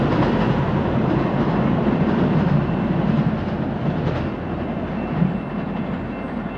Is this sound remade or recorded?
recorded